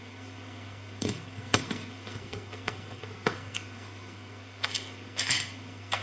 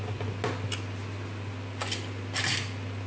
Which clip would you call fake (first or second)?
first